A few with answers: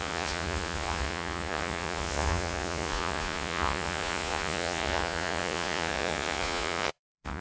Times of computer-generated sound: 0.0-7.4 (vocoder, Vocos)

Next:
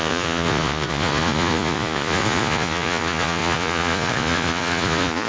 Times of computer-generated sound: 0.0-5.3 (vocoder, Vocos)

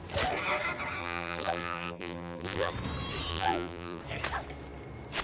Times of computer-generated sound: 1.0-2.7 (vocoder, BigVGAN v2); 3.3-4.0

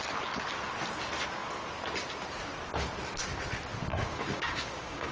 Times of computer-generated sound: 3.9-5.1 (codec, DAC)

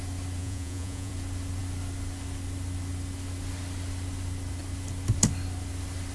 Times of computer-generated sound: 0.4-1.1 (vocoder, Vocos)

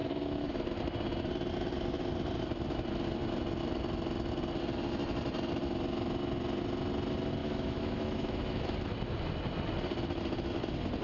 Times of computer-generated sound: 0.0-0.5 (autoencoder, DAC-VAE); 7.4-8.6

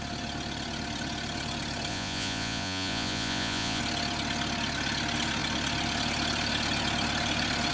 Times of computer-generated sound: 1.9-3.8 (vocoder, Vocos)

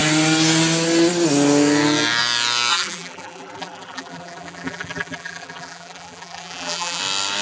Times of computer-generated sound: 2.7-7.0 (vocoder, BigVGAN v2)